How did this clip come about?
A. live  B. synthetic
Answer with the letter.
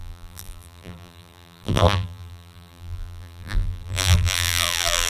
B